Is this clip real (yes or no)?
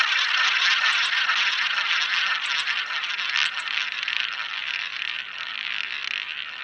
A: yes